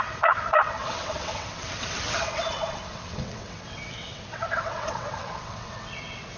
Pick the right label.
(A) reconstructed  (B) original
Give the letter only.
A